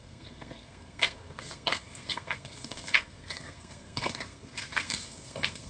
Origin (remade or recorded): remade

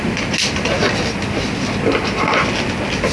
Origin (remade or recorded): recorded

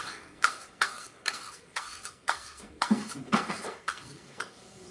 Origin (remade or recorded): remade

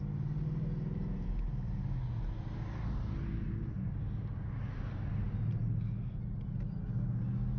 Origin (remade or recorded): recorded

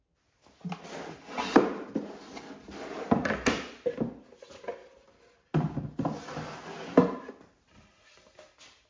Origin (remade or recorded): recorded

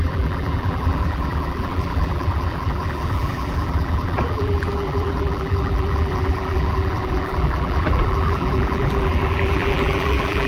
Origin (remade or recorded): remade